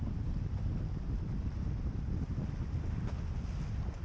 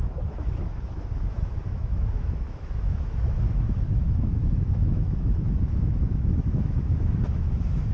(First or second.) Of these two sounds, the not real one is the second